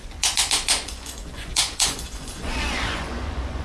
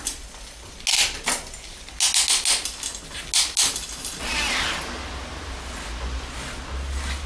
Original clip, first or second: second